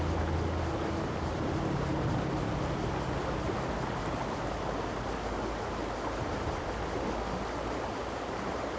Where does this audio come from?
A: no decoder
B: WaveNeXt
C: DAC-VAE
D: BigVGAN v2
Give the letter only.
A